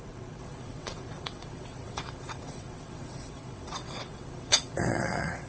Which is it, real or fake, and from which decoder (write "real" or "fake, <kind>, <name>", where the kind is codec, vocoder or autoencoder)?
fake, vocoder, WaveNeXt